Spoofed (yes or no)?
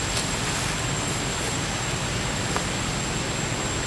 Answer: no